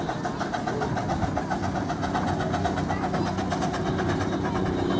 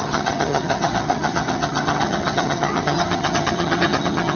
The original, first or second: first